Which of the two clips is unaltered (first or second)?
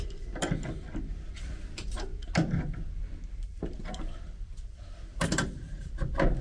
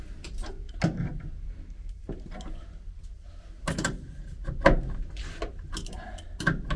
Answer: second